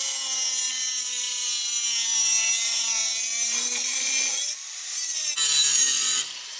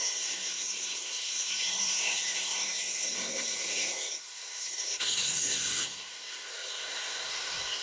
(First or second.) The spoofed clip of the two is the second